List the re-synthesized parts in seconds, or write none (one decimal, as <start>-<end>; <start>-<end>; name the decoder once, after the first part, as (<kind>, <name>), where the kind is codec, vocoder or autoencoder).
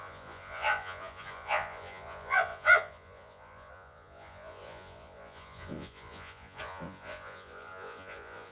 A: 0.0-8.5 (vocoder, Vocos)